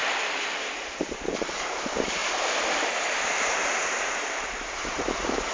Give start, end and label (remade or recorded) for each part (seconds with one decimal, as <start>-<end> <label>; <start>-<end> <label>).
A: 0.0-0.6 recorded; 0.6-2.2 remade; 2.2-2.8 recorded; 2.8-5.5 remade

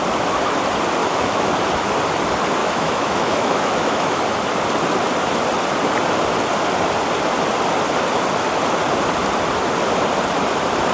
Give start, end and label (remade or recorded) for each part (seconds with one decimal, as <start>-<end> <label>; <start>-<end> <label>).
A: 0.0-1.0 recorded; 1.0-1.5 remade; 1.5-2.6 recorded; 2.6-4.2 remade; 4.2-10.9 recorded

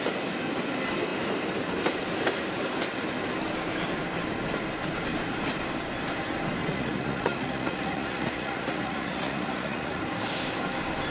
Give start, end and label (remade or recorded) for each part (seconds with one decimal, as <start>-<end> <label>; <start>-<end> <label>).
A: 0.0-6.6 recorded; 6.6-10.0 remade; 10.0-11.1 recorded

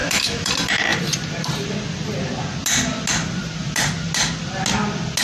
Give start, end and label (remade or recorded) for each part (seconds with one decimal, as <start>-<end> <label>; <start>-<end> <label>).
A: 0.0-0.5 remade; 0.5-5.2 recorded

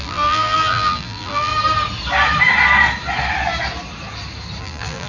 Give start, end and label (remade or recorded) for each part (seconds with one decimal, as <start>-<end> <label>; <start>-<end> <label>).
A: 0.0-1.5 remade; 1.5-4.6 recorded; 4.6-5.1 remade

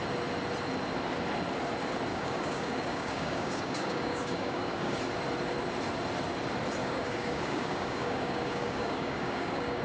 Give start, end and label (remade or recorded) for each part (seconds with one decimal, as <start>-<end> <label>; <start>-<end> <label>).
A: 0.0-2.1 recorded; 2.1-5.0 remade; 5.0-6.8 recorded; 6.8-9.8 remade